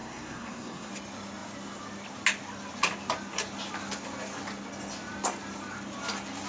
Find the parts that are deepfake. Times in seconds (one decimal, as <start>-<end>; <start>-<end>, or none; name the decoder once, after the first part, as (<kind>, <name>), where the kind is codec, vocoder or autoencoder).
0.0-0.9 (codec, SNAC)